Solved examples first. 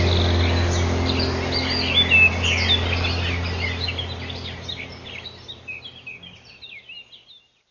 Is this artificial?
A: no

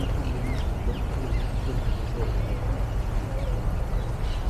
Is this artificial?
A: no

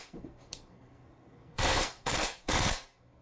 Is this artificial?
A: yes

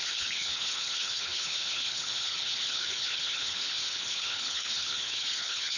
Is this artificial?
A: yes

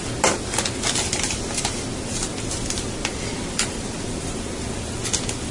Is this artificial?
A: no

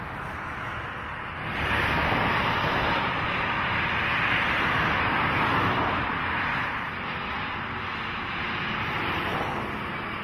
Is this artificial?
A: no